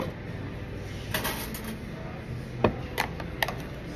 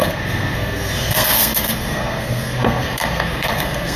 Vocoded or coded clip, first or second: second